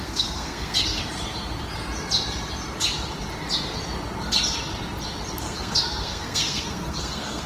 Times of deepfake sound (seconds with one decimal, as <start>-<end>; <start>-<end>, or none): 0.0-1.0; 5.4-7.5